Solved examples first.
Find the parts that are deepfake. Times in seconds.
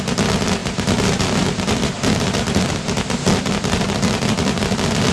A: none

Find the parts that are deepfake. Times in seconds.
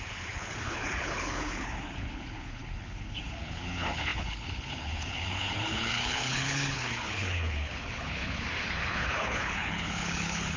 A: 0.0-10.6